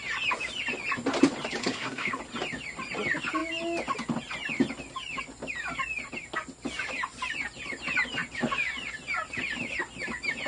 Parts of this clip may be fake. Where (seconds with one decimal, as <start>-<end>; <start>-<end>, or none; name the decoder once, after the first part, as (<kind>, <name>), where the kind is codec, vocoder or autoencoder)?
1.6-2.2 (codec, SNAC)